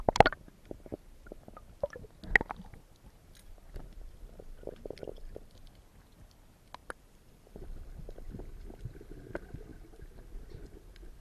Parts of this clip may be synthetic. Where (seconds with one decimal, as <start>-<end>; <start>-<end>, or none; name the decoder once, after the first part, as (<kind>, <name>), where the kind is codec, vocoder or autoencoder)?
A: 5.0-5.5 (vocoder, BigVGAN v2); 6.8-8.7